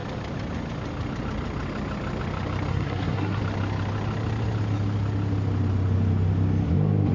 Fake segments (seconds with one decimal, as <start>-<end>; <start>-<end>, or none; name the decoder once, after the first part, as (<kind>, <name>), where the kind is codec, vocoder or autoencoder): 2.7-3.4 (codec, SNAC)